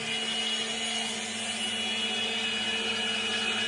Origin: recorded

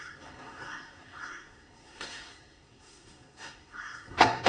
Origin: remade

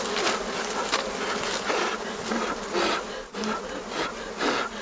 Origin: recorded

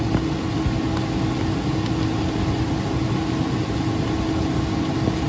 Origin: recorded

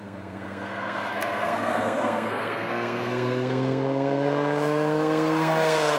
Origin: remade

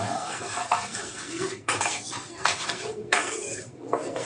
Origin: remade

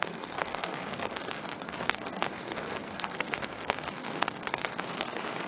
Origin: remade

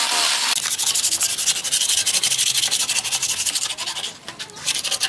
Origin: recorded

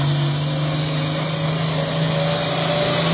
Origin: recorded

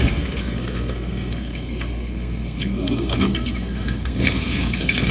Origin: remade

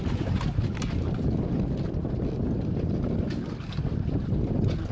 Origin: recorded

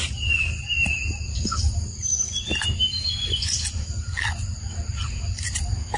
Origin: recorded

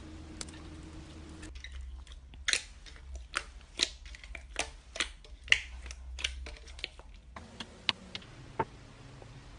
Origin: recorded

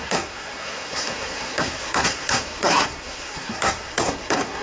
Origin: remade